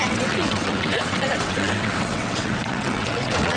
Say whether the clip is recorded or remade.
remade